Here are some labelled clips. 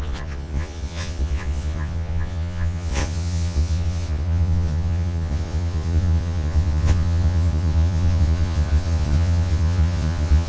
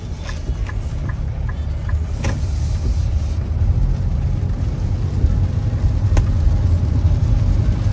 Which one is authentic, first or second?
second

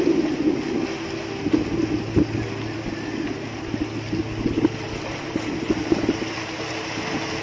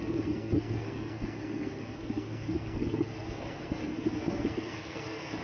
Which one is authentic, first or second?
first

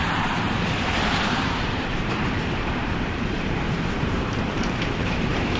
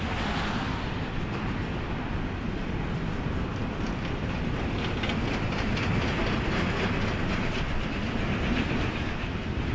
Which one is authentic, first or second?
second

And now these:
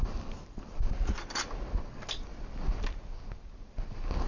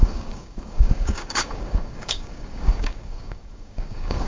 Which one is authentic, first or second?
first